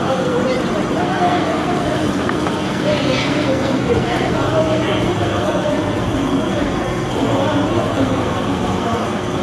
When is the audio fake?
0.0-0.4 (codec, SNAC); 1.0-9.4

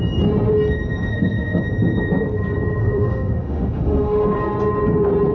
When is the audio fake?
1.1-1.6 (autoencoder, DAC-VAE); 2.8-4.4

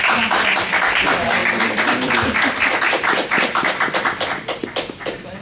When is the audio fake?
none

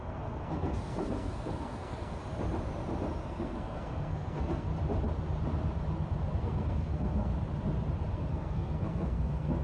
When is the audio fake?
0.0-2.2 (codec, SNAC); 3.2-4.7; 6.4-7.3; 8.1-9.6

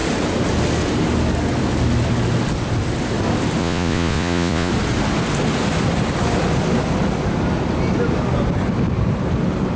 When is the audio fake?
3.6-4.7 (vocoder, Vocos)

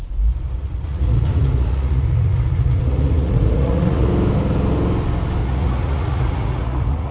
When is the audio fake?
0.6-4.1 (vocoder, Vocos); 5.4-7.1

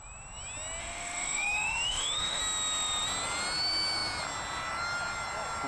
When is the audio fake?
0.8-2.4 (autoencoder, DAC-VAE)